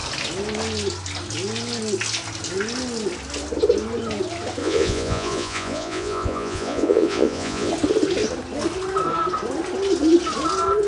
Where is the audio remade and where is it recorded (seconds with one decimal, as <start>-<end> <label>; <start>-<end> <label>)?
0.0-4.6 recorded; 4.6-7.7 remade; 7.7-10.9 recorded